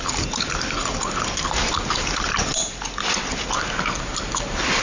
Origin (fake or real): real